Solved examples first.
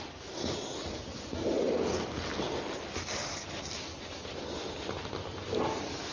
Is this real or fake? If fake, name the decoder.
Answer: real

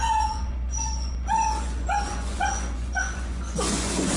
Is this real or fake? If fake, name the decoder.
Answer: fake, vocoder, Vocos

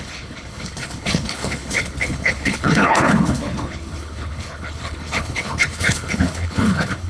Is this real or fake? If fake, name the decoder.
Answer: fake, codec, HILCodec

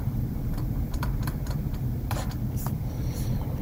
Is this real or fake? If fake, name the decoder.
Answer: fake, vocoder, BigVGAN v2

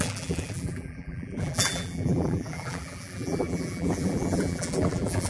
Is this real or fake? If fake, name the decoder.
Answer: fake, vocoder, BigVGAN v2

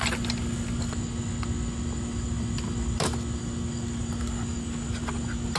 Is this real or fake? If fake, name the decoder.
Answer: real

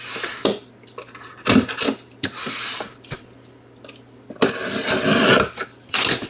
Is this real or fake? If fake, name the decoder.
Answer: fake, vocoder, BigVGAN v2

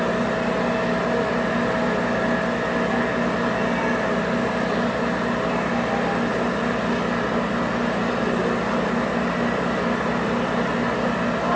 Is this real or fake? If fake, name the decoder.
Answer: real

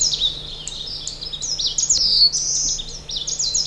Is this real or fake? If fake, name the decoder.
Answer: real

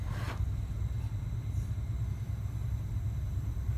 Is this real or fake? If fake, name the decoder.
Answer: real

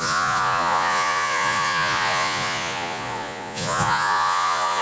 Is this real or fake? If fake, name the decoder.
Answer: fake, vocoder, Vocos